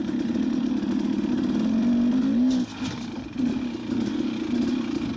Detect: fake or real real